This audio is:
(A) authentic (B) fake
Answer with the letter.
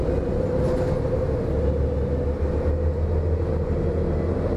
A